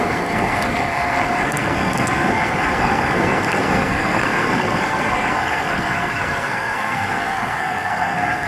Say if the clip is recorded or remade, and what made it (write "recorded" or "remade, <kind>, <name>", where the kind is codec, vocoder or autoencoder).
remade, codec, SNAC